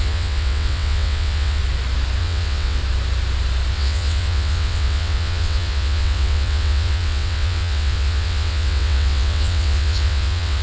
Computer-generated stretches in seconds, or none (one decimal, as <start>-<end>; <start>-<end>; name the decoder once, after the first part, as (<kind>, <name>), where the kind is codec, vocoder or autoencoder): 0.0-1.6 (vocoder, WaveNeXt); 2.2-2.8; 3.7-10.6